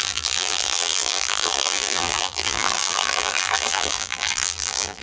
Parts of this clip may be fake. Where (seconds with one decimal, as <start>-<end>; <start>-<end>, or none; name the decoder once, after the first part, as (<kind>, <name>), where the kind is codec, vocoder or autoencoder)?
0.0-5.0 (vocoder, BigVGAN v2)